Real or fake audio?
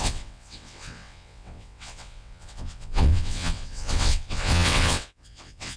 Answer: fake